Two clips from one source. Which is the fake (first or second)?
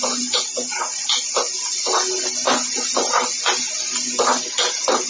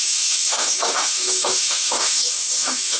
second